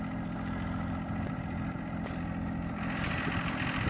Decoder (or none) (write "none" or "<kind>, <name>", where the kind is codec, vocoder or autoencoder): none